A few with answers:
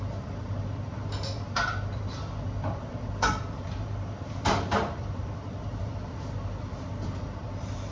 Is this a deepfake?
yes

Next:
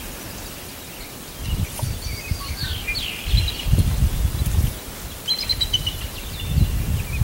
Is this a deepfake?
no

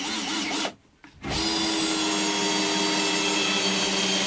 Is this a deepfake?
no